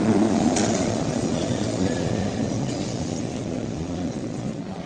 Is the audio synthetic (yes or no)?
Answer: yes